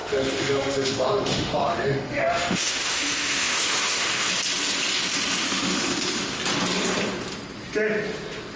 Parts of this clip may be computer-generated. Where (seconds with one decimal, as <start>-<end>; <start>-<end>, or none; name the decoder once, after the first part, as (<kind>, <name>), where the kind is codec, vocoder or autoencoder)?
0.0-4.3 (autoencoder, DAC-VAE); 5.4-6.4